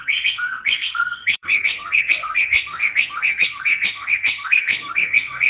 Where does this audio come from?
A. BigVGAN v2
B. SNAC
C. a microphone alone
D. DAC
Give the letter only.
B